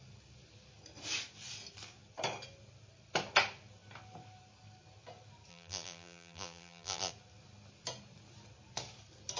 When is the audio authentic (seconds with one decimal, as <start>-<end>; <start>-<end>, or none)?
0.0-5.5; 7.1-9.4